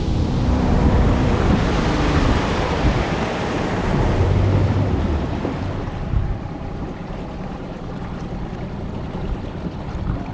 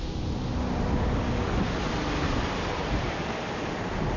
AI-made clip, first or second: first